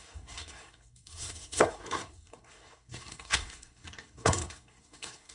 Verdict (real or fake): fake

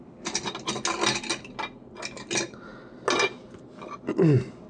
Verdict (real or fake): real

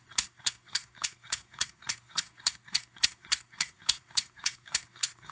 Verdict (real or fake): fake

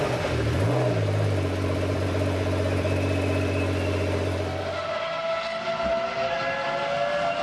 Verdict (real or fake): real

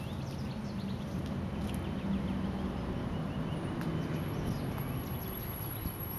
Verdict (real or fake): real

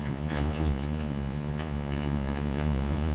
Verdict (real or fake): fake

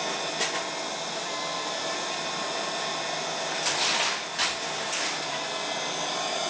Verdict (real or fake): real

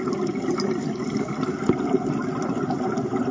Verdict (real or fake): real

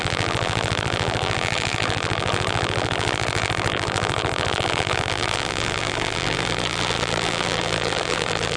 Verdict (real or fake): fake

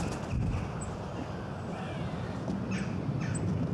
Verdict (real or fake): real